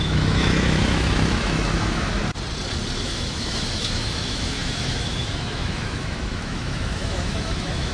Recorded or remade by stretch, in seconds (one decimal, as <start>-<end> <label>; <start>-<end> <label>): 0.0-2.2 remade; 2.2-3.0 recorded; 3.0-7.9 remade